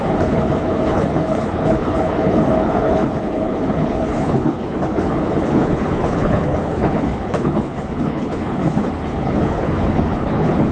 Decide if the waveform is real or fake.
fake